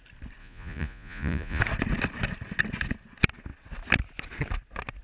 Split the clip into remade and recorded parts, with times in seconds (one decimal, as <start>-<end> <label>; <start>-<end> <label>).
0.0-0.4 recorded; 0.4-1.6 remade; 1.6-5.0 recorded